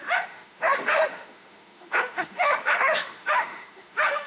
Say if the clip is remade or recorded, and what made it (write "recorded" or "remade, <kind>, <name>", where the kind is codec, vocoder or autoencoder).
remade, autoencoder, DAC-VAE